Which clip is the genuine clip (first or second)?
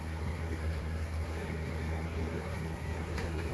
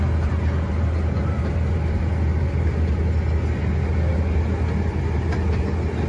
second